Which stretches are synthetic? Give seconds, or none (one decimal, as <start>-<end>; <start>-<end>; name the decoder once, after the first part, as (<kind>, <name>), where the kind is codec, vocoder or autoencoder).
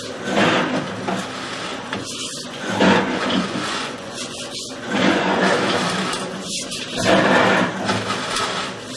1.7-5.4 (vocoder, Vocos); 6.2-6.8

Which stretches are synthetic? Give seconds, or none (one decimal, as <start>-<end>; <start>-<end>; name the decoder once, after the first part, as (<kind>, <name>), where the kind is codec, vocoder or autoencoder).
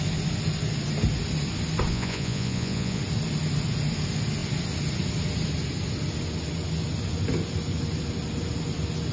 1.9-3.0 (vocoder, Vocos)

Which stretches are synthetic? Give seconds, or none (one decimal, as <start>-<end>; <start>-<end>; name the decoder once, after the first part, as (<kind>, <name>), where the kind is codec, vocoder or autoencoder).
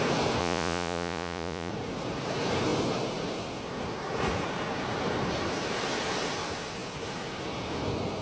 0.4-1.7 (vocoder, Vocos)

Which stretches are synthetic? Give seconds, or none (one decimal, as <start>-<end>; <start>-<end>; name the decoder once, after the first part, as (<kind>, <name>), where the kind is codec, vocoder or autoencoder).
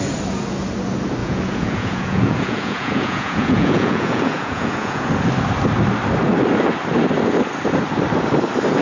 1.2-5.1 (vocoder, Vocos)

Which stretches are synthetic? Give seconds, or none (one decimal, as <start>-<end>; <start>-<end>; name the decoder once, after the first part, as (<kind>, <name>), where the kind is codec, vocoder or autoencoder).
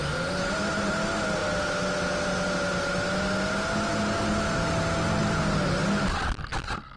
none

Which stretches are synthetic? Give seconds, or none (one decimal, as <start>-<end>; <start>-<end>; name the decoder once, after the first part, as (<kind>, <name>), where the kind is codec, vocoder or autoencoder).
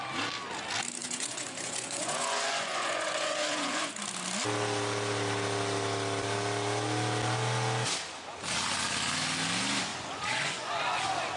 1.0-3.9 (vocoder, Vocos); 9.9-11.0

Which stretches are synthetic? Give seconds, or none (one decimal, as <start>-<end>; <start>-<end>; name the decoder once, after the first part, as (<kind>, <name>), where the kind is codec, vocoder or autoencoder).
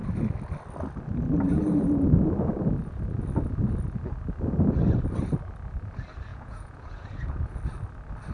6.3-7.6 (vocoder, Vocos)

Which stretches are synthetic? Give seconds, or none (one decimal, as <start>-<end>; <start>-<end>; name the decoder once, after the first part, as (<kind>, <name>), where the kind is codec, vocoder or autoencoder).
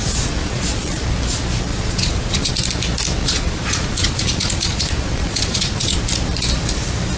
0.0-1.0 (vocoder, Vocos); 1.7-2.5; 3.2-6.0